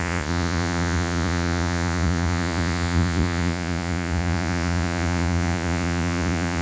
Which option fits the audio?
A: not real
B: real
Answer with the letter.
A